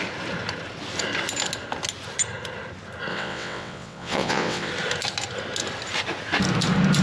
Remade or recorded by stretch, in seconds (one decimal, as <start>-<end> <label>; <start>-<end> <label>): 0.0-3.1 recorded; 3.1-4.7 remade; 4.7-7.0 recorded